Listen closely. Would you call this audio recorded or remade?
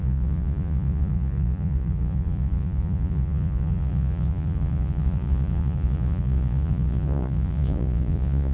remade